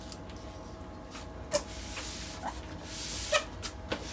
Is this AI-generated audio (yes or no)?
no